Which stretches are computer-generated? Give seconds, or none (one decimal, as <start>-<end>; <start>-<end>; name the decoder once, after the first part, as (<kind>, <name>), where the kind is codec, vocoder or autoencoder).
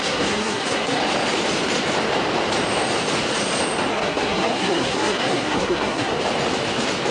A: 0.0-1.0 (codec, SNAC); 3.9-6.1